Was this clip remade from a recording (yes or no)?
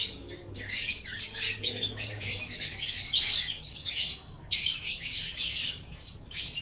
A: yes